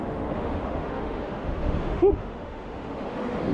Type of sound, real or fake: fake